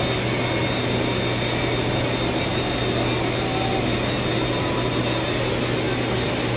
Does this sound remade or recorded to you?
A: recorded